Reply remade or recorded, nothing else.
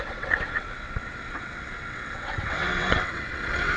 remade